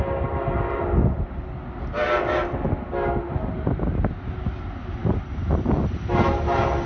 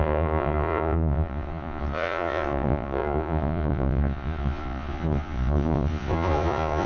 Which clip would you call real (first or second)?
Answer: first